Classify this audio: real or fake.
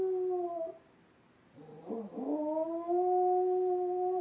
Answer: real